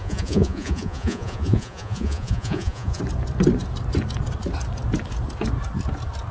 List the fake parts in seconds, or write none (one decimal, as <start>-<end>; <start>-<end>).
0.0-3.0